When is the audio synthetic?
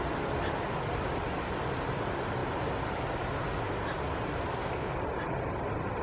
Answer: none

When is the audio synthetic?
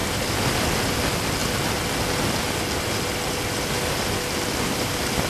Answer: none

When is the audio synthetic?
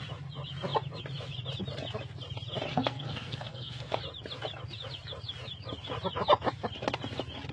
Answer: 2.7-4.0 (codec, SNAC)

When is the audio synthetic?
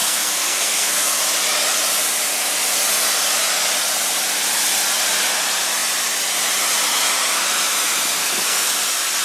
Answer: 0.0-1.2 (codec, SNAC); 8.2-8.7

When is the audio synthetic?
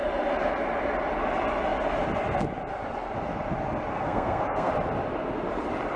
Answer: 3.9-4.7 (codec, SNAC)